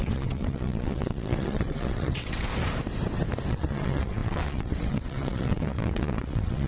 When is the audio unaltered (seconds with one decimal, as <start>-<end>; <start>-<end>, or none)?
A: 2.5-3.5